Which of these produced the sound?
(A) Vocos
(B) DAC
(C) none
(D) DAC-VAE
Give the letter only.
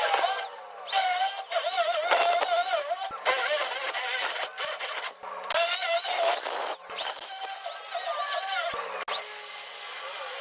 C